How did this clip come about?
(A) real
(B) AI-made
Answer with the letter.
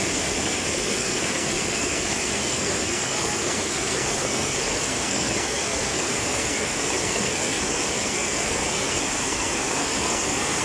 B